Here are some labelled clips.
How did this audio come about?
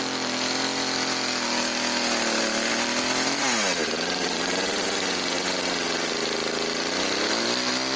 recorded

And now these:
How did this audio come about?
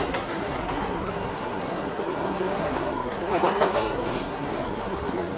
remade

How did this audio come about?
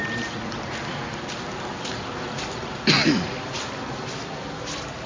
remade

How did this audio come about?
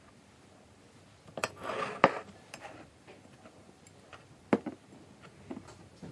recorded